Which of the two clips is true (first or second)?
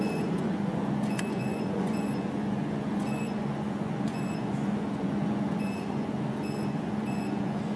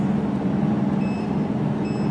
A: second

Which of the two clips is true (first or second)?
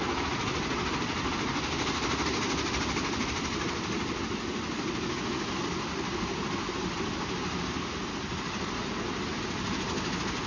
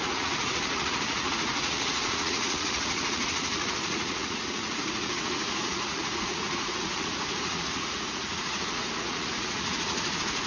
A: first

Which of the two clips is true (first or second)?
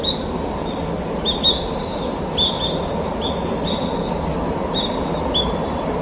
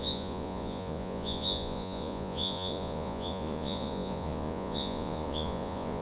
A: first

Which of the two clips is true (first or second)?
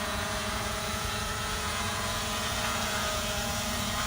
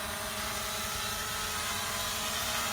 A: second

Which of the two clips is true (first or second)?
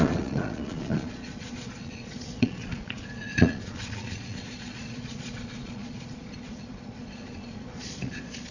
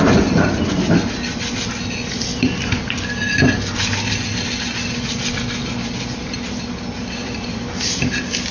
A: second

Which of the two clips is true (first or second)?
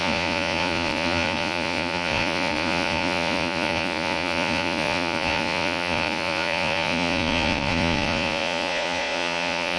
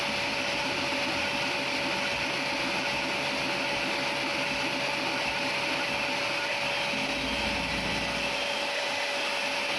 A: second